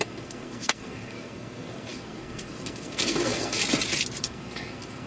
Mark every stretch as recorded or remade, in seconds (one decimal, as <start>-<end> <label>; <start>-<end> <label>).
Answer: 0.0-3.6 remade; 3.6-4.2 recorded; 4.2-5.1 remade